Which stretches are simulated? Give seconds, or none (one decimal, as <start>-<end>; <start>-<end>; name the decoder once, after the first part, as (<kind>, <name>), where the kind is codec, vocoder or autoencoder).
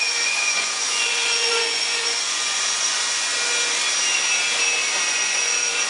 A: 0.0-3.3 (vocoder, Vocos); 5.1-5.9